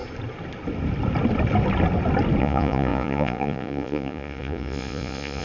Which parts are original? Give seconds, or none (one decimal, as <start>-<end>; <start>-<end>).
0.0-2.4